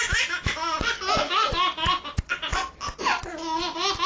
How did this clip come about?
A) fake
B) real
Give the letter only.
B